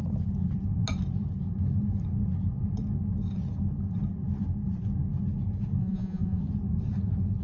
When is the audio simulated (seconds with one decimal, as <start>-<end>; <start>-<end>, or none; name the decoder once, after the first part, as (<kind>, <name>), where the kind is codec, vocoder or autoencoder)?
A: 5.8-6.4 (vocoder, Vocos)